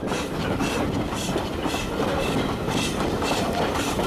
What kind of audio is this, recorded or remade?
remade